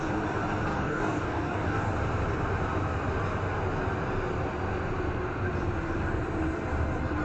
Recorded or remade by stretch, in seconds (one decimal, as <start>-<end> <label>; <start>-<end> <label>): 0.0-0.7 recorded; 0.7-1.9 remade; 1.9-7.2 recorded